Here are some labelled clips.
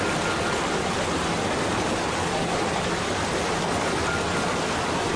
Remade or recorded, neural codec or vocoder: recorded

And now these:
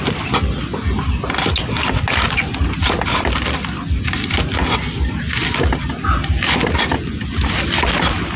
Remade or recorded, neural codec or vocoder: recorded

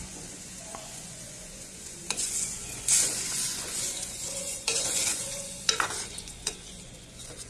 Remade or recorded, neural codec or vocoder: remade, vocoder, Vocos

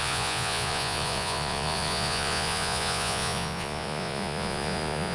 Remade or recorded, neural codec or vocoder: remade, vocoder, Vocos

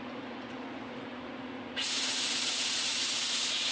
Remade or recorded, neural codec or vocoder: remade, vocoder, Vocos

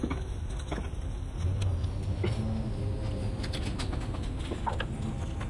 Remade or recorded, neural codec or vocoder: recorded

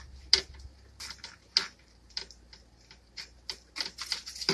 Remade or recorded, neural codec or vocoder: recorded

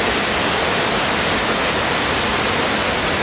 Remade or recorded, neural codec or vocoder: recorded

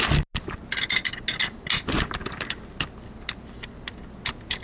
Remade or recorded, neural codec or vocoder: recorded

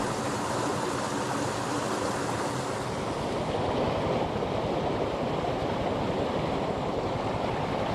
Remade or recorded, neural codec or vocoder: recorded